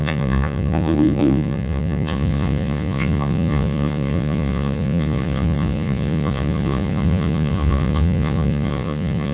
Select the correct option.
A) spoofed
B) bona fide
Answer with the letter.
A